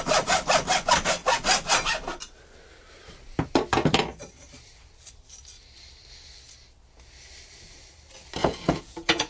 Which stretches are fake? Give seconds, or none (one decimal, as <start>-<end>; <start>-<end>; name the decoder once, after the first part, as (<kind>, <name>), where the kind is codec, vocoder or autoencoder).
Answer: 8.4-9.3 (vocoder, Vocos)